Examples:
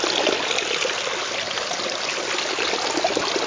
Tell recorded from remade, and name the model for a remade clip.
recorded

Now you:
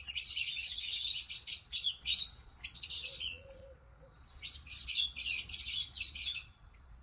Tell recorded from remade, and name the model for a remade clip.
remade, vocoder, Vocos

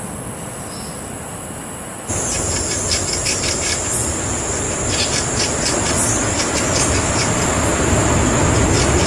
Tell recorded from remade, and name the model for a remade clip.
recorded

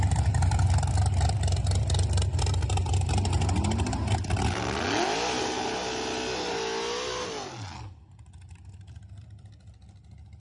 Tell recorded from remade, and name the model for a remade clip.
recorded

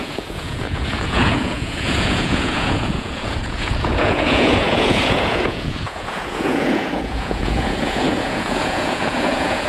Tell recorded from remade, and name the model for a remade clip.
remade, vocoder, Vocos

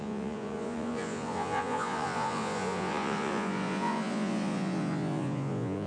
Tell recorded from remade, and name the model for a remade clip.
remade, vocoder, Vocos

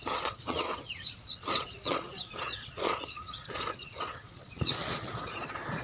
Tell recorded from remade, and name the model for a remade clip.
remade, vocoder, Vocos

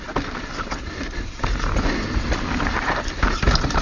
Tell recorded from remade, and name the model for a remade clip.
recorded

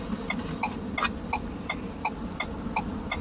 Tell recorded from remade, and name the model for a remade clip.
recorded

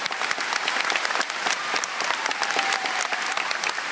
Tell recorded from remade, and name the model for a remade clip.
recorded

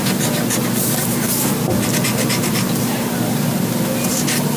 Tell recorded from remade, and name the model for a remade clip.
recorded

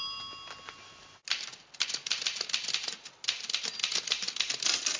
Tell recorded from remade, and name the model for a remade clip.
recorded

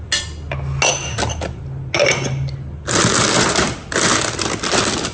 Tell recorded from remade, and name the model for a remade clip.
recorded